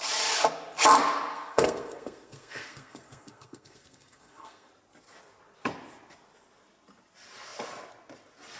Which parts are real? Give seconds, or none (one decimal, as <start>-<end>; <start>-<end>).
0.0-1.3; 4.7-8.6